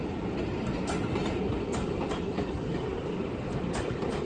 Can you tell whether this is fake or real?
real